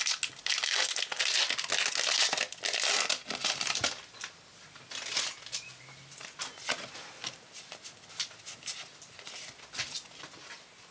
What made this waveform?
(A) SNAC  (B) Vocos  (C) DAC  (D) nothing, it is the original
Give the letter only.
D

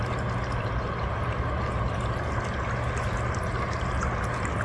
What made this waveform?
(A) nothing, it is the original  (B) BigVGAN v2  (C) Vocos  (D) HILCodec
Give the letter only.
A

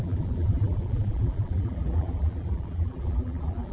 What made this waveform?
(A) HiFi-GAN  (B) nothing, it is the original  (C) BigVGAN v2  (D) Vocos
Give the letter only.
C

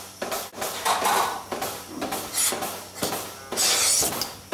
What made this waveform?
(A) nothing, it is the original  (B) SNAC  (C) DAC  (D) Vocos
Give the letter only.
A